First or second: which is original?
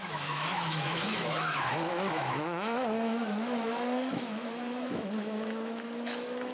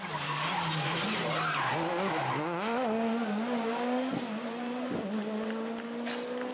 second